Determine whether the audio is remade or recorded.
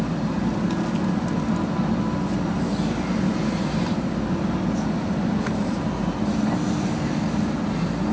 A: recorded